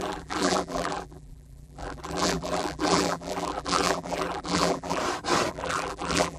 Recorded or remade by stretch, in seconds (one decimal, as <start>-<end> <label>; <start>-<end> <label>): 0.0-5.0 remade; 5.0-5.5 recorded; 5.5-6.4 remade